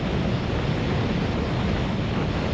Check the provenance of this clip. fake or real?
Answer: real